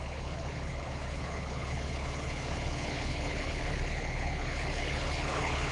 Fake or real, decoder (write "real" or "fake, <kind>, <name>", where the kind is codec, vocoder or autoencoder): fake, codec, HILCodec